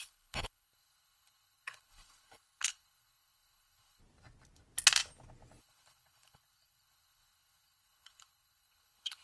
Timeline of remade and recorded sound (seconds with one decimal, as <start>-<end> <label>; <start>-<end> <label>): 0.0-4.0 remade; 4.0-5.6 recorded; 5.6-9.2 remade